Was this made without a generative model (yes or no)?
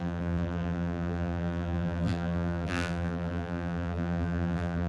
no